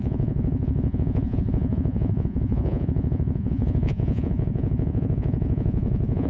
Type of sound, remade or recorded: remade